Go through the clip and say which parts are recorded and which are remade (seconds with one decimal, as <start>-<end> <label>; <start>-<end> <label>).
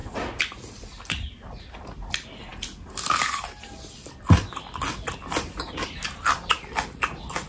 0.0-7.5 recorded